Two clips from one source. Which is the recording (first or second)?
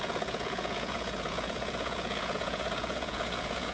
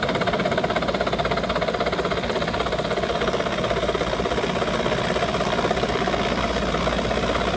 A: second